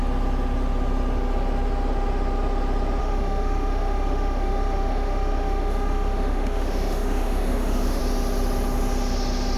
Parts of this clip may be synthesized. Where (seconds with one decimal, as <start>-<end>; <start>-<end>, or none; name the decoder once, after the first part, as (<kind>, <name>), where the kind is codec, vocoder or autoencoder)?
3.0-8.0 (autoencoder, DAC-VAE)

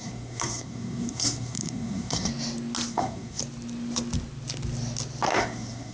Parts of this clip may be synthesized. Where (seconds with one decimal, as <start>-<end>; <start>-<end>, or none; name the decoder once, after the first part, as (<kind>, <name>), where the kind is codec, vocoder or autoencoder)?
0.0-2.3 (codec, SNAC); 2.9-3.4; 5.4-5.9

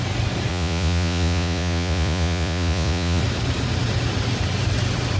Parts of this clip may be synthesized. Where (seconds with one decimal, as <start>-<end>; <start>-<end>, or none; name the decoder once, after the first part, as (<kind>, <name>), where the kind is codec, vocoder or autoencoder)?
0.5-3.2 (vocoder, Vocos)